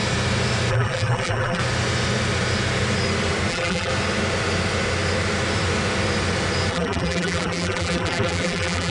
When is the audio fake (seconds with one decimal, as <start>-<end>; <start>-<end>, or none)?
0.7-1.6; 3.5-3.9; 6.7-8.9